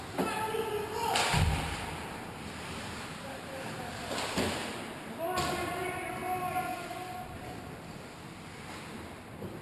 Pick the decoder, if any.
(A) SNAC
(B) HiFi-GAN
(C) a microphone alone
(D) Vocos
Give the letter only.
C